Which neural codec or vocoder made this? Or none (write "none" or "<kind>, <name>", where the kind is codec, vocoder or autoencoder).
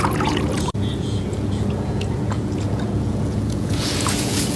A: vocoder, Vocos